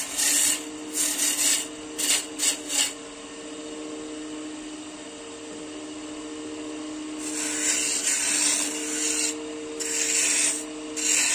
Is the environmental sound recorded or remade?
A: recorded